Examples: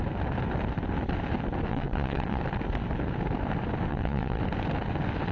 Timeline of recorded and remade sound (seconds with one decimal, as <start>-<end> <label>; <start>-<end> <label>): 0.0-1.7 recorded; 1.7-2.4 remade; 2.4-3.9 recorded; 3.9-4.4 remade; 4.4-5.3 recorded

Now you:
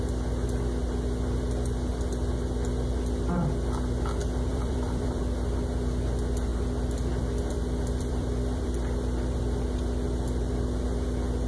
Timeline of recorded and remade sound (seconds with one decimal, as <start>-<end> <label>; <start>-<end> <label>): 0.0-4.5 recorded; 4.5-5.2 remade; 5.2-6.5 recorded; 6.5-10.8 remade; 10.8-11.5 recorded

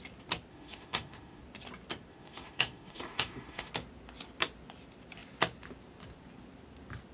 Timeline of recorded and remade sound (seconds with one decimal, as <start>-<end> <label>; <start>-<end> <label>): 0.0-0.5 recorded; 0.5-1.4 remade; 1.4-2.1 recorded; 2.1-3.7 remade; 3.7-7.1 recorded

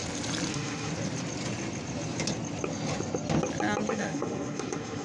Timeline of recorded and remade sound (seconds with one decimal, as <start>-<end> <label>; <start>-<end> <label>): 0.0-0.5 recorded; 0.5-0.9 remade; 0.9-3.9 recorded; 3.9-5.0 remade